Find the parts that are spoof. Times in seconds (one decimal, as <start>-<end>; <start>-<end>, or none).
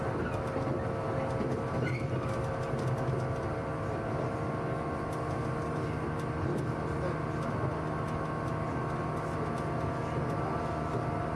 none